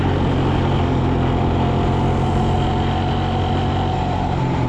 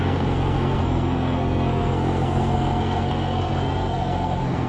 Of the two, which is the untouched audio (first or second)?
first